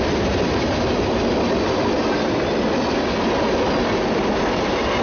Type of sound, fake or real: real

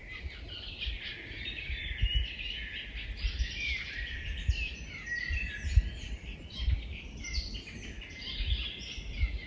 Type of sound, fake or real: real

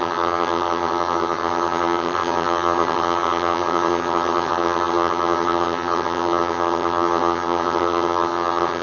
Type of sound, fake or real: fake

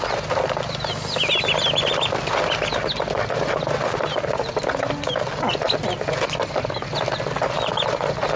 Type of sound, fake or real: real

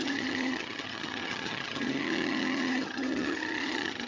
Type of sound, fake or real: fake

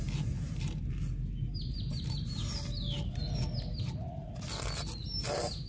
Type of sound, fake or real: real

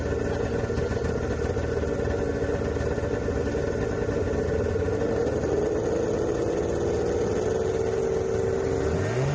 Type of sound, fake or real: real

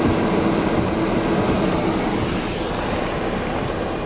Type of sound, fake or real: real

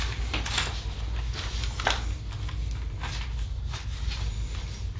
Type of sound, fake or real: real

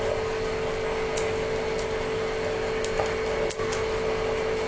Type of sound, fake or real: real